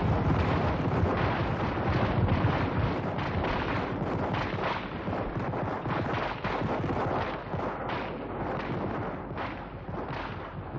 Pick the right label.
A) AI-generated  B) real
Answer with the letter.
B